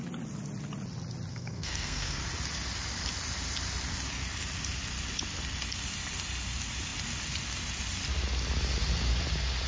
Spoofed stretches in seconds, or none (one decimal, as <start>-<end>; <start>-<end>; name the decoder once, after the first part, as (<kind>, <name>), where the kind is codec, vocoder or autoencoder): 1.3-2.2 (codec, SNAC)